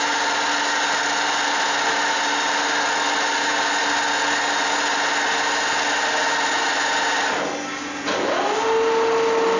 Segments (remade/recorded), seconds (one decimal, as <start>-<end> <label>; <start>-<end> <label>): 0.0-9.6 recorded

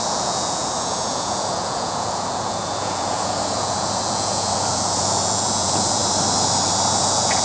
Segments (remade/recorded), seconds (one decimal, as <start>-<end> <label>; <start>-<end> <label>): 0.0-6.0 remade; 6.0-7.0 recorded; 7.0-7.4 remade

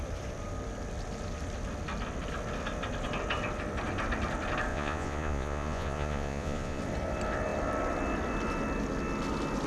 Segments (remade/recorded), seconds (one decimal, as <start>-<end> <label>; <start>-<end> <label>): 0.0-4.7 recorded; 4.7-6.8 remade; 6.8-9.7 recorded

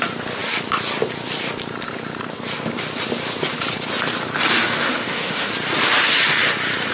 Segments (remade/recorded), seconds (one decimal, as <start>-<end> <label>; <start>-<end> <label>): 0.0-4.8 recorded; 4.8-5.5 remade; 5.5-6.9 recorded

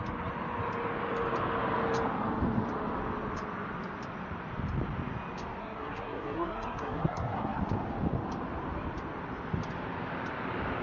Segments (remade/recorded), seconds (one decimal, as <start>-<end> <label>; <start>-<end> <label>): 0.0-5.6 recorded; 5.6-7.6 remade; 7.6-10.8 recorded

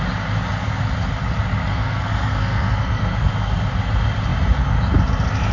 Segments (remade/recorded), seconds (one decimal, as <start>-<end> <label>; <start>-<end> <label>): 0.0-1.7 recorded; 1.7-3.3 remade; 3.3-5.5 recorded

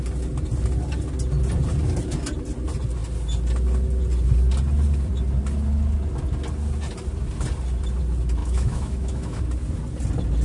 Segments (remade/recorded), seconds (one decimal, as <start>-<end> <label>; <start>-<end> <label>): 0.0-8.4 recorded; 8.4-9.4 remade; 9.4-10.4 recorded

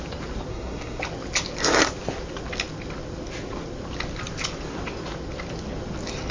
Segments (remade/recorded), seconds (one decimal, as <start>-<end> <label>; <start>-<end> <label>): 0.0-0.5 recorded; 0.5-1.0 remade; 1.0-6.3 recorded